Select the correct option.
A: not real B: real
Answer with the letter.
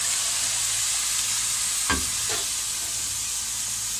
B